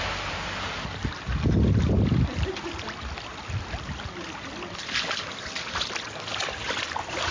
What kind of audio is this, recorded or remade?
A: recorded